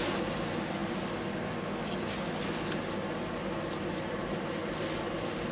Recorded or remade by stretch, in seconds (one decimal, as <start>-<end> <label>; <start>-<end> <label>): 0.0-5.5 recorded